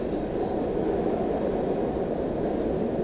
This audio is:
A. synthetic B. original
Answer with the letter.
A